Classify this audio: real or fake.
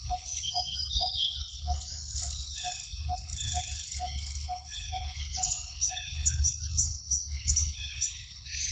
fake